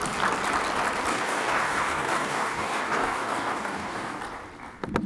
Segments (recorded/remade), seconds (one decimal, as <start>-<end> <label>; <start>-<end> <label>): 0.0-1.1 recorded; 1.1-4.2 remade; 4.2-5.1 recorded